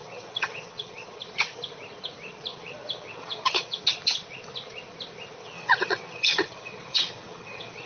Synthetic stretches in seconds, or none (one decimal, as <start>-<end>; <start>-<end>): 0.0-1.2; 2.5-3.8; 5.4-7.9